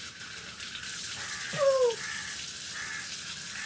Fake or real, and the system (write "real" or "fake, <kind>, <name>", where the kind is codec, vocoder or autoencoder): real